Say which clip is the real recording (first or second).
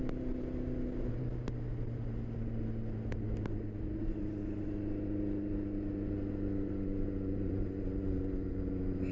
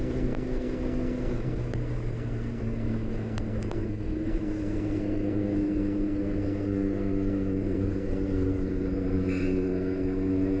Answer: first